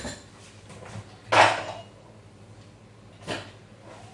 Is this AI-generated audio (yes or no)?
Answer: no